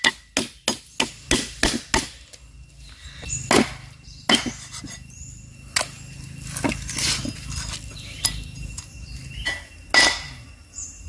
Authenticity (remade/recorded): recorded